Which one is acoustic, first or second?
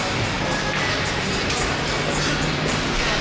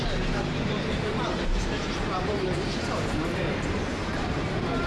first